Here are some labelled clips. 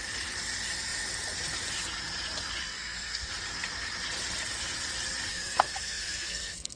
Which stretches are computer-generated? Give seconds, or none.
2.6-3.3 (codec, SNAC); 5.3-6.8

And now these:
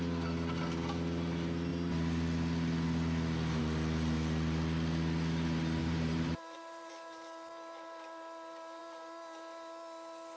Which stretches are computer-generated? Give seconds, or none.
5.8-6.9 (vocoder, BigVGAN v2)

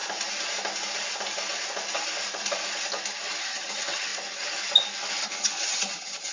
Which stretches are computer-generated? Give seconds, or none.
3.4-4.1 (vocoder, HiFi-GAN); 5.1-6.3